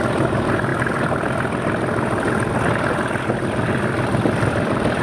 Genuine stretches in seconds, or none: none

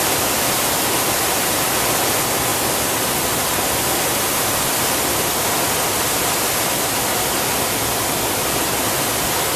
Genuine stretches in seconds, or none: 0.0-9.6

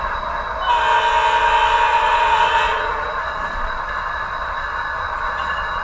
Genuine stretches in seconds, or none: 0.0-1.9